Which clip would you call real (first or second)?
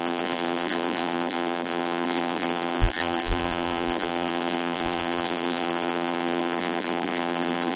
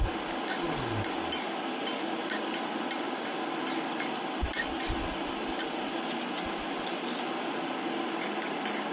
second